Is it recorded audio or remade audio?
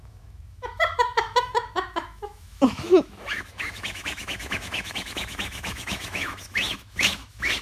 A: remade